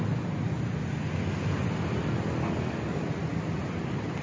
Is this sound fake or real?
real